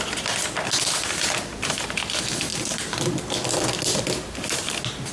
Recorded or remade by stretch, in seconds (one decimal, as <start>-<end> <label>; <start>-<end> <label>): 0.0-5.1 recorded